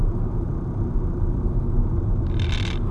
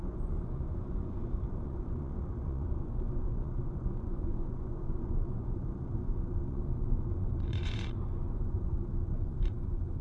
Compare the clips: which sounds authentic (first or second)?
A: first